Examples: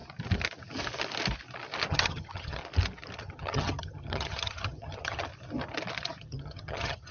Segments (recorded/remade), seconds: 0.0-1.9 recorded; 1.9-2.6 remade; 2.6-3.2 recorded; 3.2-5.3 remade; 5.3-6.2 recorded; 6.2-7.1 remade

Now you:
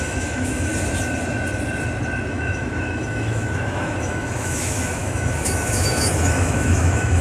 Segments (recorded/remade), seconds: 0.0-0.7 remade; 0.7-2.3 recorded; 2.3-7.2 remade

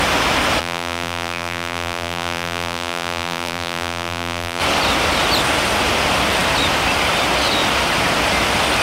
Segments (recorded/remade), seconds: 0.0-0.6 recorded; 0.6-4.6 remade; 4.6-8.8 recorded